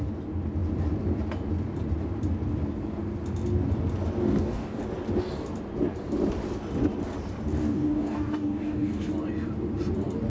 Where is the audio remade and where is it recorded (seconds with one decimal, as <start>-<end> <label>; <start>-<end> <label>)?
0.0-4.2 recorded; 4.2-4.8 remade; 4.8-7.6 recorded; 7.6-9.1 remade; 9.1-10.3 recorded

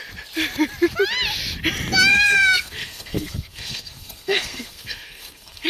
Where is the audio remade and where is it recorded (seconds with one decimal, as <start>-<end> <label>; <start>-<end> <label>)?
0.0-2.1 recorded; 2.1-5.7 remade

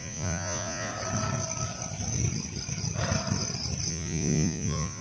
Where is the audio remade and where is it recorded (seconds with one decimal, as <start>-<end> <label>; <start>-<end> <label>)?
0.0-0.9 remade; 0.9-3.9 recorded; 3.9-5.0 remade